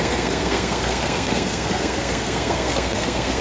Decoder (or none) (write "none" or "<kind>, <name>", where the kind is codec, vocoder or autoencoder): codec, SNAC